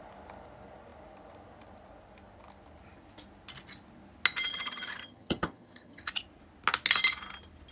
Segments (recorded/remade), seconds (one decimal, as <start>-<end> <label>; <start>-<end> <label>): 0.0-4.5 recorded; 4.5-6.0 remade; 6.0-7.7 recorded